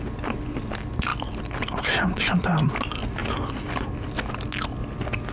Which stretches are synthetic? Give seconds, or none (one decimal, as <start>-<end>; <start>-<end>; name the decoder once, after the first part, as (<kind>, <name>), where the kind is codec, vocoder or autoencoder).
none